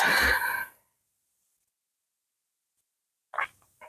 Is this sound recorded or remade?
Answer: recorded